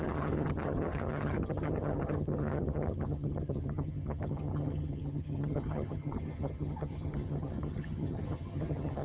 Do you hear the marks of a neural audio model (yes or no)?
yes